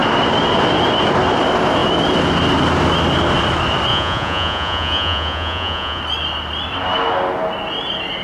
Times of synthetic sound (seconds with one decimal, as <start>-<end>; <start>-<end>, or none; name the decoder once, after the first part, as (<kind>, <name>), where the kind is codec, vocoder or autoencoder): 3.9-6.0 (vocoder, Vocos)